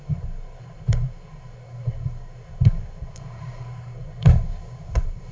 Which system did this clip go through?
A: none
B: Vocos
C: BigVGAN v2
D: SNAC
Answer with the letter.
D